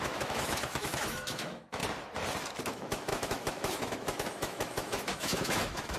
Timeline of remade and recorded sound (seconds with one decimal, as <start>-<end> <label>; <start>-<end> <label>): 0.0-1.8 remade; 1.8-2.6 recorded; 2.6-6.0 remade